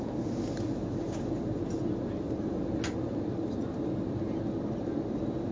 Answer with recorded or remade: recorded